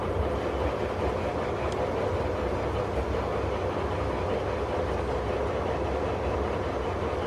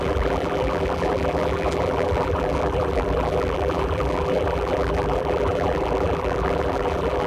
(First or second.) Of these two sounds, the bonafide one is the first